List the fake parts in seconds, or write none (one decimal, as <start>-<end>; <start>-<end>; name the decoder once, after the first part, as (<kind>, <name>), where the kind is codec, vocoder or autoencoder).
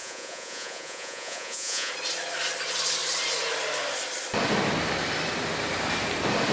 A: 0.0-1.9 (vocoder, Vocos)